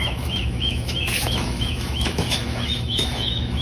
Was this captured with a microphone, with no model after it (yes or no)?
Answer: no